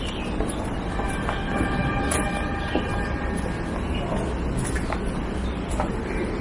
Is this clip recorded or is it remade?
recorded